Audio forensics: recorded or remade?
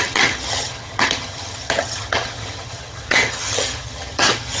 remade